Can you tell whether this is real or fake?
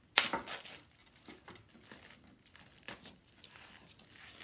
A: real